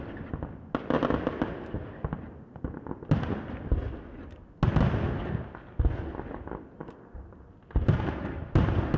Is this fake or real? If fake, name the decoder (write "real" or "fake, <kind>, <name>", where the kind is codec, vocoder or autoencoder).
real